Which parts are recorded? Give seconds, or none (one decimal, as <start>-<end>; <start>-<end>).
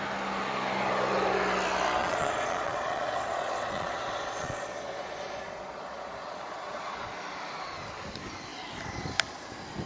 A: 0.0-2.0; 7.1-9.9